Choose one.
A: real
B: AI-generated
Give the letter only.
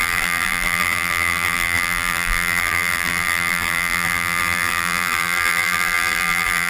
B